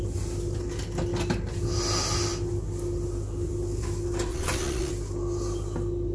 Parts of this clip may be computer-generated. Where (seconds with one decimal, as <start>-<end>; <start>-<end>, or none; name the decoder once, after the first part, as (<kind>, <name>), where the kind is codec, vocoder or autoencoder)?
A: 4.3-4.9 (vocoder, Vocos)

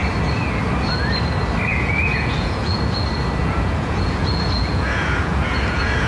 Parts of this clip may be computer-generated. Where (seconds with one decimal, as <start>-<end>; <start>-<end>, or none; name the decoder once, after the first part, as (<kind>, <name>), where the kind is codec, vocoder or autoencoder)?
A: 1.7-2.8 (vocoder, Vocos); 3.4-6.1

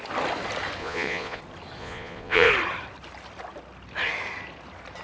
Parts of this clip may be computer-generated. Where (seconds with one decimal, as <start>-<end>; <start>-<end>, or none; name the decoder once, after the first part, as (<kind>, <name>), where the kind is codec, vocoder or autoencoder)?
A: 0.8-1.4 (vocoder, Vocos); 1.8-2.5

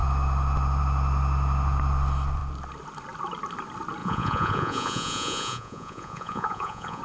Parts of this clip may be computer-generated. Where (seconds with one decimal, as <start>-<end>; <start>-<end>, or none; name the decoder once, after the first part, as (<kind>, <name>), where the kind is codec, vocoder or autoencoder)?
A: 4.0-7.0 (vocoder, Vocos)

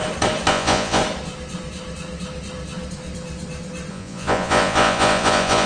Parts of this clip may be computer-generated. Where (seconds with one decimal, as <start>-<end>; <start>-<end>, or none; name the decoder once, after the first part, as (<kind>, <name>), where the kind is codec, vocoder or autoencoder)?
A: 0.5-1.0 (vocoder, Vocos); 3.9-5.7

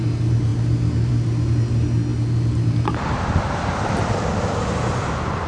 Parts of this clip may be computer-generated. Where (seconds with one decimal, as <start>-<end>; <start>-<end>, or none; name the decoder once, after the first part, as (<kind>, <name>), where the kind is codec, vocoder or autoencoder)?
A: none

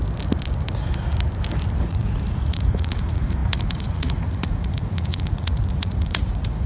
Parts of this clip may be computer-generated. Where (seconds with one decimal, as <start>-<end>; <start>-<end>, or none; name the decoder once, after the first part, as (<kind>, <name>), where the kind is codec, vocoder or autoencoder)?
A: 1.8-6.7 (vocoder, Vocos)

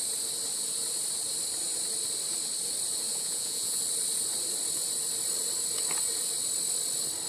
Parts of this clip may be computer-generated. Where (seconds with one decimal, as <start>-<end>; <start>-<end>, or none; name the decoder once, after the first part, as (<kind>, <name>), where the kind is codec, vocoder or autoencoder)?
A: 3.1-3.8 (vocoder, Vocos)